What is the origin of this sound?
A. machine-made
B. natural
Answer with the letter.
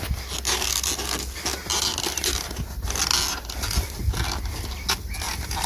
B